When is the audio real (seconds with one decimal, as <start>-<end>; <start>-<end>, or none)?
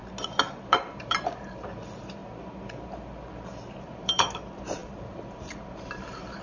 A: 0.0-0.7; 2.2-3.8